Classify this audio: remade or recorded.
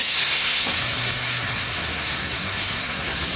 remade